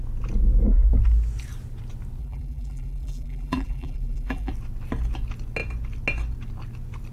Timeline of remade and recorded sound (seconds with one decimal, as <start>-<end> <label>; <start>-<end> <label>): 0.0-2.2 recorded; 2.2-4.5 remade; 4.5-7.1 recorded